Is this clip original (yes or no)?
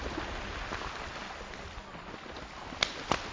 yes